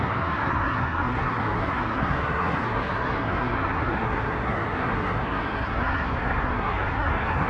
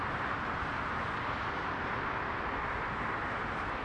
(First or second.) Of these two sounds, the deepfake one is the first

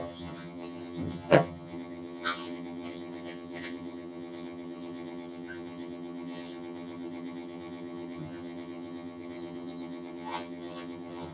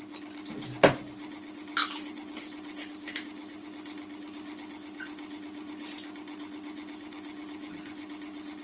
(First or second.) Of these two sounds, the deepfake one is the first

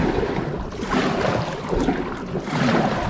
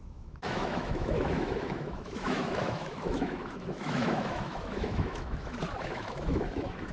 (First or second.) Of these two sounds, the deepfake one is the second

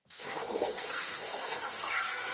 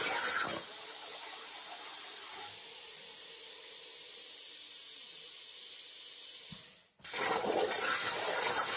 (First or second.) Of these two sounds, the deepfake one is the first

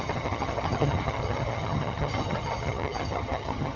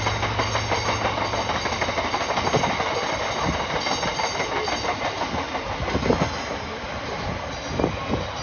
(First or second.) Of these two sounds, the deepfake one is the first